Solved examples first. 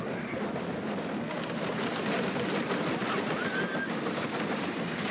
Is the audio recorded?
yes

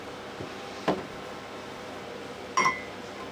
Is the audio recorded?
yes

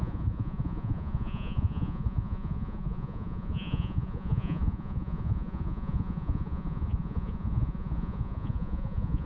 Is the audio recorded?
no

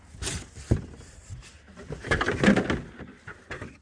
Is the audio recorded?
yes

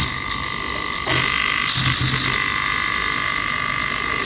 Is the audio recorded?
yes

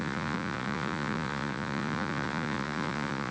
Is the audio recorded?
no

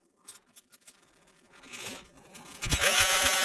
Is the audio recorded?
no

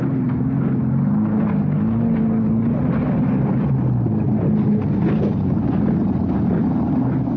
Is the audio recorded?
yes